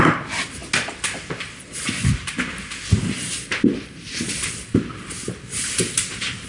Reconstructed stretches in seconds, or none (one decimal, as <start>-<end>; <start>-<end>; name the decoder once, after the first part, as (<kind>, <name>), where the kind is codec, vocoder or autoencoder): none

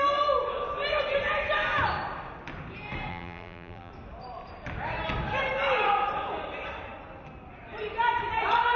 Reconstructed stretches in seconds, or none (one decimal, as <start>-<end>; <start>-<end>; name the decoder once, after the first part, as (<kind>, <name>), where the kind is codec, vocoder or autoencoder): 3.1-3.9 (vocoder, BigVGAN v2)

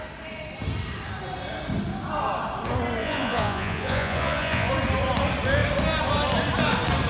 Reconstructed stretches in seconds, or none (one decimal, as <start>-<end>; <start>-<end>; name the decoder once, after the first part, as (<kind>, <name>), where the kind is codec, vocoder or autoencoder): 3.0-4.7 (vocoder, Vocos)